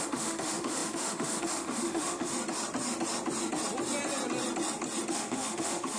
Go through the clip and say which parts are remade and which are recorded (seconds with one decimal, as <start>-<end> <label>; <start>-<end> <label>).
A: 0.0-2.3 remade; 2.3-5.1 recorded; 5.1-6.0 remade